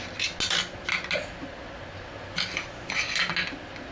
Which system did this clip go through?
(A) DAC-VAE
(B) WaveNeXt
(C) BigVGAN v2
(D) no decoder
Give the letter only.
D